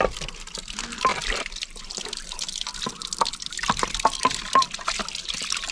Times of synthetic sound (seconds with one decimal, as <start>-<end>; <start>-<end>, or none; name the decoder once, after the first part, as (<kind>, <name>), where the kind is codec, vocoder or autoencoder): none